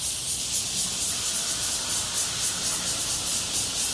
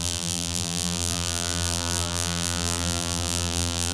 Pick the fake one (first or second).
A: second